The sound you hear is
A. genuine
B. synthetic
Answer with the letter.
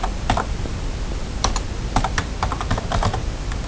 B